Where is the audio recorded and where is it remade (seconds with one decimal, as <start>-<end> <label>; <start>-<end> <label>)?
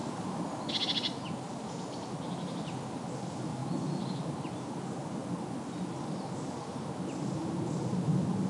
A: 0.0-8.5 recorded